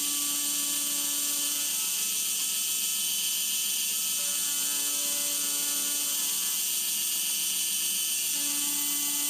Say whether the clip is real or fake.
real